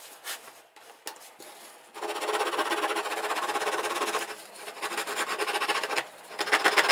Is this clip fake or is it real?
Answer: real